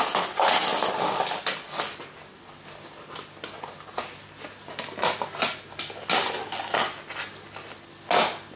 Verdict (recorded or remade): recorded